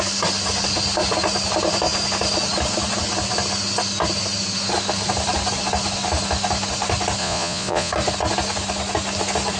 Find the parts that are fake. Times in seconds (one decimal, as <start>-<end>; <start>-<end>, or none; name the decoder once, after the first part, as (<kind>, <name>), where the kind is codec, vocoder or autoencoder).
7.2-7.9 (vocoder, Vocos)